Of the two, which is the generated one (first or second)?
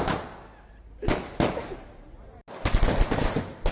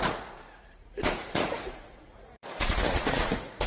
second